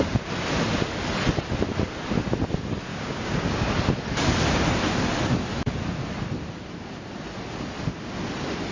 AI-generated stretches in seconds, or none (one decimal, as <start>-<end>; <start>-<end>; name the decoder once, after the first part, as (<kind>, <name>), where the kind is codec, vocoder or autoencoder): 2.9-3.7 (codec, DAC)